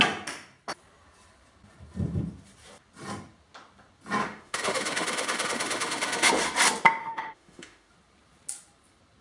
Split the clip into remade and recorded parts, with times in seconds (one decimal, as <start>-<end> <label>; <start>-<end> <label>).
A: 0.0-4.2 recorded; 4.2-6.3 remade; 6.3-7.0 recorded; 7.0-7.9 remade; 7.9-9.2 recorded